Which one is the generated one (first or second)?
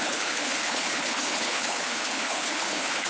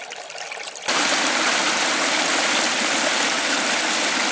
first